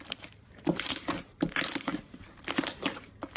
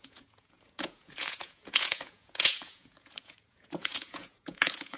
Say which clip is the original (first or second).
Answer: first